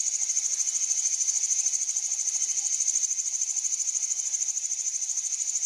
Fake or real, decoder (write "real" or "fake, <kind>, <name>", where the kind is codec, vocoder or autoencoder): real